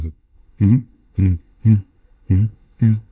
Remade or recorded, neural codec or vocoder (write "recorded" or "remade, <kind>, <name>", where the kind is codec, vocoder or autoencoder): remade, codec, SNAC